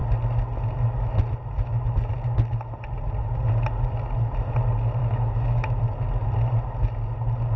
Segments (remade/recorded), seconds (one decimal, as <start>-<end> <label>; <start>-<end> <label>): 0.0-5.0 recorded; 5.0-5.8 remade; 5.8-7.6 recorded